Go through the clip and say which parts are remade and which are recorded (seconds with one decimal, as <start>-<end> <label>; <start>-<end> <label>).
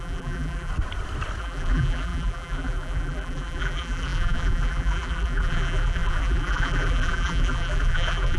0.0-0.7 remade; 0.7-1.4 recorded; 1.4-8.4 remade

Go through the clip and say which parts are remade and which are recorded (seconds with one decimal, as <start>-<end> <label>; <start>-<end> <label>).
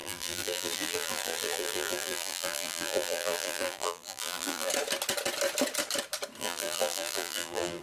0.0-4.7 remade; 4.7-6.4 recorded; 6.4-7.8 remade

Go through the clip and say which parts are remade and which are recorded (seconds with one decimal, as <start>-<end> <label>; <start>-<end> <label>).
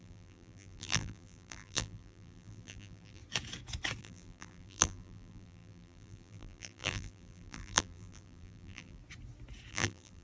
0.0-3.2 remade; 3.2-4.0 recorded; 4.0-9.0 remade; 9.0-9.7 recorded; 9.7-10.2 remade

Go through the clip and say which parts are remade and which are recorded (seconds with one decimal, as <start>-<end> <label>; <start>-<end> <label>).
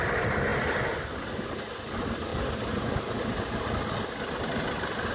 0.0-2.3 recorded; 2.3-3.4 remade; 3.4-5.1 recorded